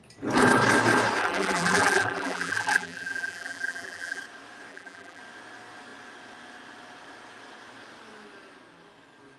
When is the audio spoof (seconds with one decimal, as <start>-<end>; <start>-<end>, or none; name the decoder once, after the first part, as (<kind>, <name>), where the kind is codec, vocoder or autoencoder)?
1.2-4.2 (vocoder, BigVGAN v2); 4.7-5.2